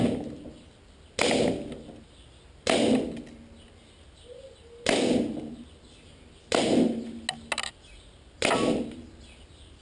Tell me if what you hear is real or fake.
real